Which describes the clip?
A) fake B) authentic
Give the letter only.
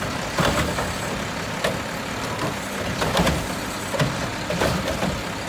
B